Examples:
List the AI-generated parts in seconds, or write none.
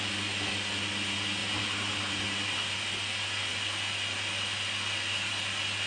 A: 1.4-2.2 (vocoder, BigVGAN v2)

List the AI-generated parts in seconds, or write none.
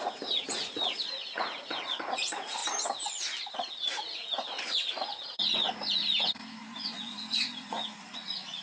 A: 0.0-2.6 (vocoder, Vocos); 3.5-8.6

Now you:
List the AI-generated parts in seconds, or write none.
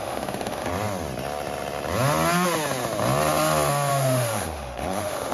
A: 0.0-0.7 (autoencoder, DAC-VAE); 3.9-5.3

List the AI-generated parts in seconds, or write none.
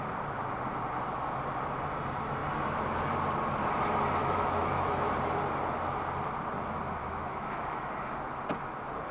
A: 4.2-5.1 (autoencoder, DAC-VAE); 7.0-7.9